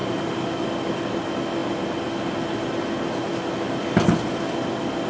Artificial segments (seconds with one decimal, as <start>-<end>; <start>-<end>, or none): 0.0-0.6